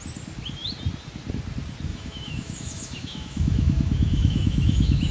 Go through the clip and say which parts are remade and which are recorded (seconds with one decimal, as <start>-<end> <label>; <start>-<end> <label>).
0.0-1.9 recorded; 1.9-5.1 remade